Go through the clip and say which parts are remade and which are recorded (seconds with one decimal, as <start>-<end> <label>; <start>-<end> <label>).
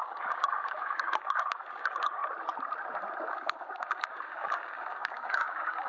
0.0-2.2 remade; 2.2-3.3 recorded; 3.3-5.9 remade